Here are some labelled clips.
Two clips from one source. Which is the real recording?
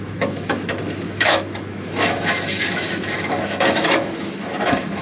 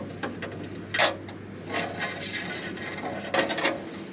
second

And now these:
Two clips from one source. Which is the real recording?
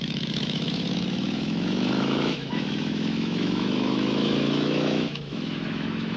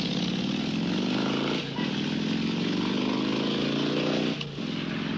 second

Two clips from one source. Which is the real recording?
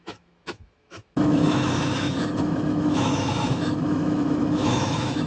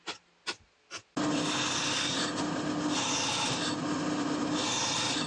second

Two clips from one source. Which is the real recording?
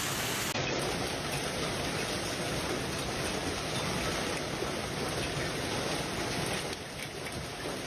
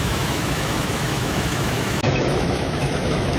first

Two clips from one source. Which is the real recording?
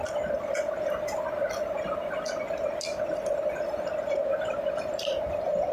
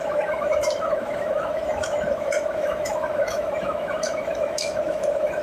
first